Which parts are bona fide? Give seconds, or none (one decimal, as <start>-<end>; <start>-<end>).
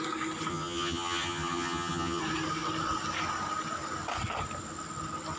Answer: 0.0-0.5; 2.2-5.4